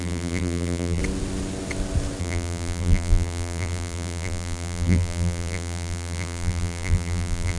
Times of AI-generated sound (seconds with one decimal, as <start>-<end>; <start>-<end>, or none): 0.0-1.0; 2.2-7.6